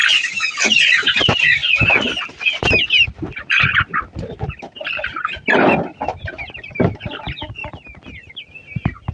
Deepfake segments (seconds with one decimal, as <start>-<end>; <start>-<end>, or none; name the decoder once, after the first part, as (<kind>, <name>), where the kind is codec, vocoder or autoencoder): 1.2-1.6 (vocoder, BigVGAN v2); 2.3-7.6

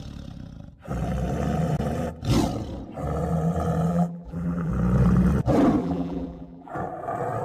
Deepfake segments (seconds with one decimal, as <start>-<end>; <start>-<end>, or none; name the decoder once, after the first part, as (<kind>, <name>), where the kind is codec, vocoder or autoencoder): 3.9-4.7 (vocoder, BigVGAN v2); 5.8-6.7

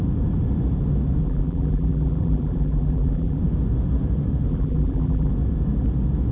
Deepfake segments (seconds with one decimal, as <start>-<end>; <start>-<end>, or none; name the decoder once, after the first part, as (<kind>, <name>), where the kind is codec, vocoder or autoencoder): 1.2-3.4 (vocoder, BigVGAN v2); 4.5-5.3

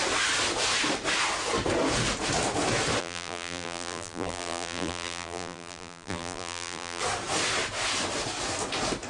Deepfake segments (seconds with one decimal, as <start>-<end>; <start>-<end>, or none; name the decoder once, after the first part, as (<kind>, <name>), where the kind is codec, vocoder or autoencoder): 3.0-7.0 (vocoder, BigVGAN v2)

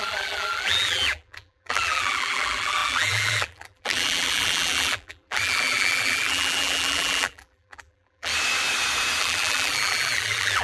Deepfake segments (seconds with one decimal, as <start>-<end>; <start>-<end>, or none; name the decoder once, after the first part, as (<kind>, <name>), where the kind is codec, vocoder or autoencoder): 0.0-8.3 (vocoder, BigVGAN v2); 9.2-10.6

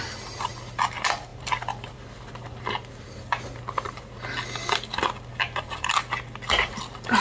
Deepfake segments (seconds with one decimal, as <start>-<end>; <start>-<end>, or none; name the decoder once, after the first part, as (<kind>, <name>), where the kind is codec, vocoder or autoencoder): 1.3-2.3 (vocoder, BigVGAN v2); 5.3-5.9

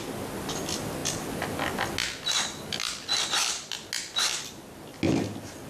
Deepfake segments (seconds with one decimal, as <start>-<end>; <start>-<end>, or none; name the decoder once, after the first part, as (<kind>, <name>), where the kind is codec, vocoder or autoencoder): none

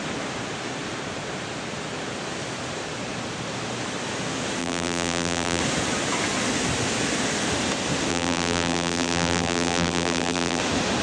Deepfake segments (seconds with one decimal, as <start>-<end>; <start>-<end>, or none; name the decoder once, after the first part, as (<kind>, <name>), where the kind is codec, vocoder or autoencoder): 4.6-5.6 (vocoder, BigVGAN v2); 8.1-10.6